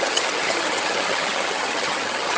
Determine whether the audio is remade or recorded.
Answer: remade